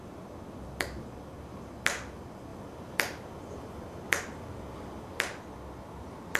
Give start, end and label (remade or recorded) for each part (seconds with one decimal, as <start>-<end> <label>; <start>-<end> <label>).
0.0-6.4 recorded